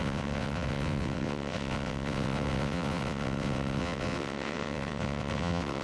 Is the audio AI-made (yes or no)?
yes